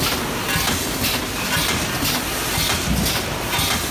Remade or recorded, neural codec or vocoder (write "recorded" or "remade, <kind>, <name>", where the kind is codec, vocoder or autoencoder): recorded